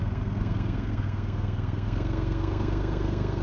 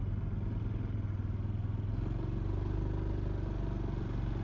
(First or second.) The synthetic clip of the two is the first